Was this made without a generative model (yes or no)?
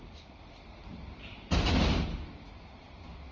yes